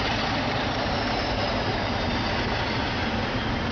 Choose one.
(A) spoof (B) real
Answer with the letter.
B